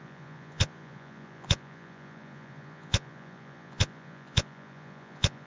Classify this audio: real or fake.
fake